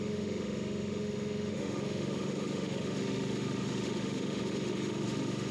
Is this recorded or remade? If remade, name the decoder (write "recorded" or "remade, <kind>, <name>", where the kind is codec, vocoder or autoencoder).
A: remade, autoencoder, DAC-VAE